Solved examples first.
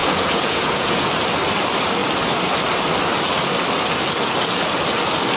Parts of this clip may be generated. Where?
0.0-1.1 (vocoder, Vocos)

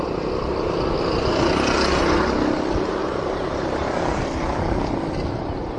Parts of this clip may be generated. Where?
3.0-4.2 (vocoder, BigVGAN v2)

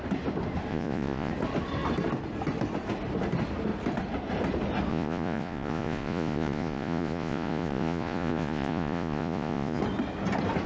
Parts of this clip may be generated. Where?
0.7-1.3 (vocoder, Vocos); 4.9-9.8

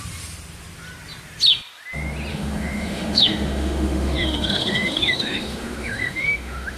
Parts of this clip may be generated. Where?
2.3-6.8 (autoencoder, DAC-VAE)

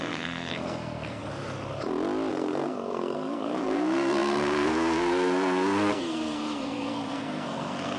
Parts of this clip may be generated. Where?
0.0-1.2 (codec, SNAC); 2.3-8.0

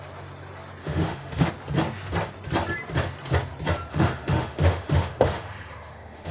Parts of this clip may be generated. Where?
0.8-1.5 (autoencoder, DAC-VAE); 3.9-6.3

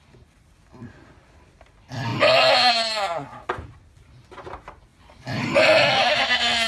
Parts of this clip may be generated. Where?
4.9-5.8 (vocoder, BigVGAN v2)

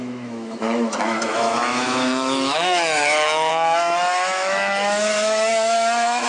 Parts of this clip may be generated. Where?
0.0-6.3 (autoencoder, DAC-VAE)